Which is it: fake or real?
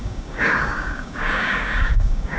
fake